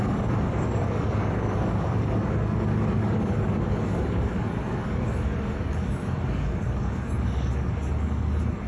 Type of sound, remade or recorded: remade